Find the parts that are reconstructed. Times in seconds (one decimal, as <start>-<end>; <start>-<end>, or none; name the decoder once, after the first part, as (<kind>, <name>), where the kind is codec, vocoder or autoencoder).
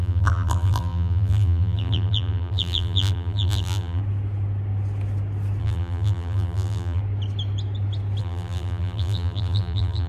0.0-4.0 (vocoder, BigVGAN v2); 5.6-7.0; 8.2-10.1